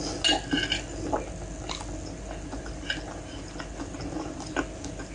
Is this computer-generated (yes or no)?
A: no